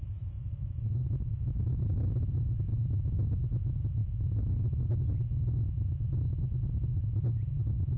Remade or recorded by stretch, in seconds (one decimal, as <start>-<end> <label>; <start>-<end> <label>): 0.0-1.8 remade; 1.8-8.0 recorded